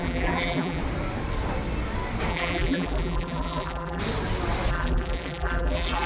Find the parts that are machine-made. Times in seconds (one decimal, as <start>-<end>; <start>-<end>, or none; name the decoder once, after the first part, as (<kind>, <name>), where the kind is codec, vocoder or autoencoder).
0.0-0.8 (vocoder, BigVGAN v2); 2.3-4.0; 4.7-6.1